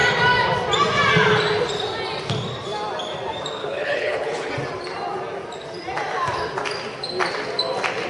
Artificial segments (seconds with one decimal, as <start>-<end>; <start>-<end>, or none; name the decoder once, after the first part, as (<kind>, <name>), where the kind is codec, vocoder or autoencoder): 3.6-4.5 (codec, HILCodec)